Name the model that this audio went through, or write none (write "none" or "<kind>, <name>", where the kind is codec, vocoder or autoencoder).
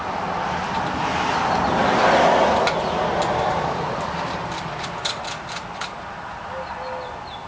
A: none